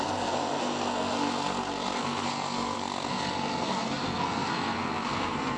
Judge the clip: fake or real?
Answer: fake